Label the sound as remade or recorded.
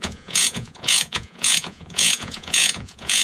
remade